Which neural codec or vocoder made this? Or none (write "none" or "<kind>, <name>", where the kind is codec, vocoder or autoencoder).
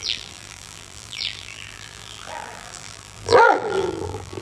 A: vocoder, BigVGAN v2